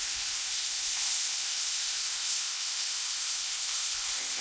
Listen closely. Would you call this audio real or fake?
fake